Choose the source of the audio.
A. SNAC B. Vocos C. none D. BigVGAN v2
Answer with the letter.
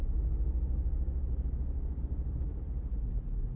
C